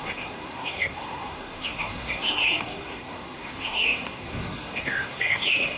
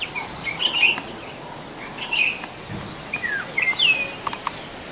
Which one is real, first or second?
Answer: second